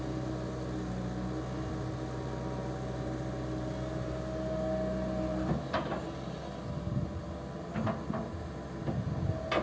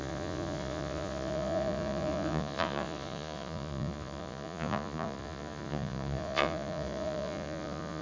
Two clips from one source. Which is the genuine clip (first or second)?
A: first